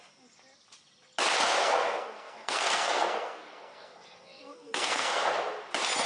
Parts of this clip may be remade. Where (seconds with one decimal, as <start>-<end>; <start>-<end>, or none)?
1.6-5.2